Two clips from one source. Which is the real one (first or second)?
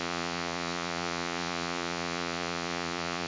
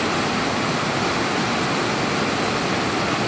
second